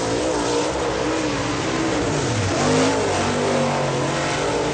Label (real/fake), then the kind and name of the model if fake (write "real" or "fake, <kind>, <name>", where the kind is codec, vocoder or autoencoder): real